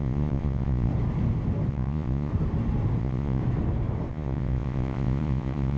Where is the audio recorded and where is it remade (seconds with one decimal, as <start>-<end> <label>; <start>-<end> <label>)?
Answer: 0.0-0.9 remade; 0.9-1.7 recorded; 1.7-2.3 remade; 2.3-3.0 recorded; 3.0-3.4 remade; 3.4-4.1 recorded; 4.1-5.8 remade